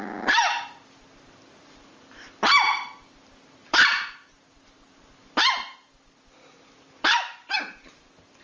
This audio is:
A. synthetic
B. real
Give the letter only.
A